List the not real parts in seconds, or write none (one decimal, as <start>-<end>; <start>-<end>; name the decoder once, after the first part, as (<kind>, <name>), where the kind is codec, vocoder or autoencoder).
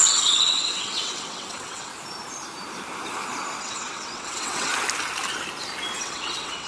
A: 0.0-1.9 (vocoder, WaveNeXt); 3.6-4.7; 6.0-6.7